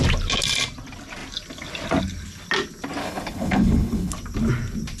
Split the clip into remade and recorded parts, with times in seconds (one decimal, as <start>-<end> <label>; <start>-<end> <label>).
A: 0.0-3.0 recorded; 3.0-4.1 remade; 4.1-5.0 recorded